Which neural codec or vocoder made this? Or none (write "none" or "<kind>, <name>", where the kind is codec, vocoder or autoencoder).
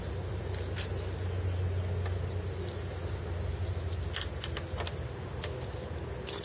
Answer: none